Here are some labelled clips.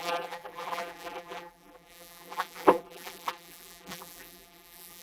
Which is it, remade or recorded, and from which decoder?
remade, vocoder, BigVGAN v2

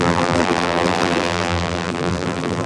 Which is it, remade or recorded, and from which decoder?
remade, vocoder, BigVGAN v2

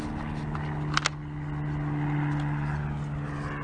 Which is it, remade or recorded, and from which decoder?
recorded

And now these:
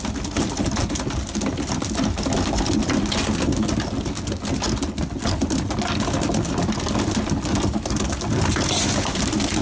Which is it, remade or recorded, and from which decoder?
recorded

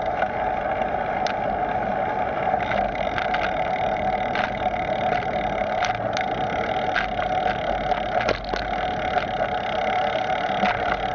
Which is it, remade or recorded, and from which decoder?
recorded